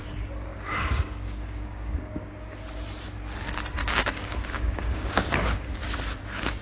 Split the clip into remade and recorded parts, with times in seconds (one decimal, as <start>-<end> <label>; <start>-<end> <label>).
0.0-0.5 recorded; 0.5-2.4 remade; 2.4-3.8 recorded; 3.8-5.8 remade; 5.8-6.6 recorded